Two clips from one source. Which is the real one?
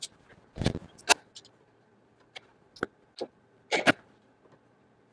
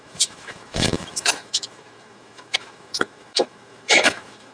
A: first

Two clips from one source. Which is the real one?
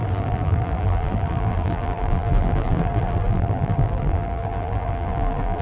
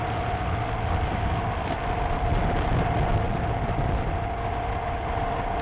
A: second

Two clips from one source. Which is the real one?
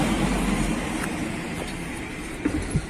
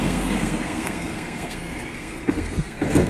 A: first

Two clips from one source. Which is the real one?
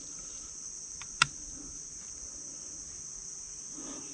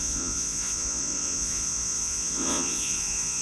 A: first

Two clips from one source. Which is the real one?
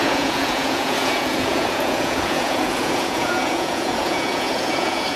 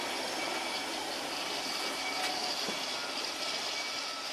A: second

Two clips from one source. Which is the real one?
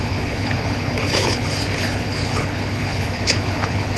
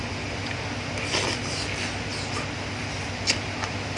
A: second